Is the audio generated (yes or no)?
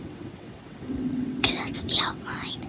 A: yes